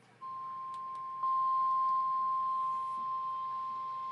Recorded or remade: recorded